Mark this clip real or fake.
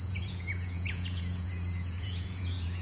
fake